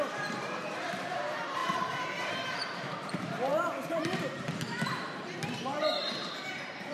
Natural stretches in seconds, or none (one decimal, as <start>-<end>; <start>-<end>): none